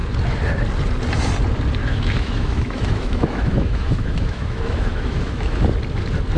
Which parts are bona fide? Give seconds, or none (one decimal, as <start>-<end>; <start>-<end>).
0.0-1.8; 5.6-6.4